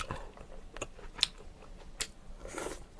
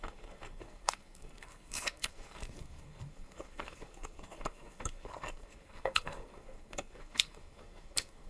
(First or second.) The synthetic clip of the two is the second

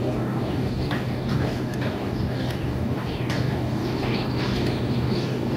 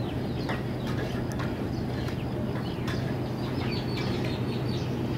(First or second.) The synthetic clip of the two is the first